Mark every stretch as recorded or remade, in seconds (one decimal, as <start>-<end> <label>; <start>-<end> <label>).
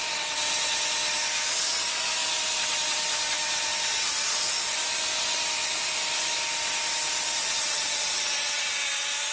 0.0-7.4 recorded; 7.4-8.9 remade; 8.9-9.3 recorded